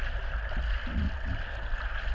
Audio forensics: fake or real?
real